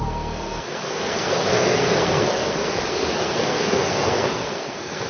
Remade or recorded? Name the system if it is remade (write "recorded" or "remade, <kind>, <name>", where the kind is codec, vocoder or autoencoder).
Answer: remade, codec, SNAC